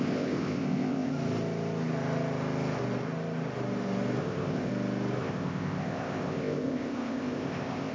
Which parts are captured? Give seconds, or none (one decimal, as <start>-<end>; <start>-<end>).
1.1-4.2; 4.7-5.2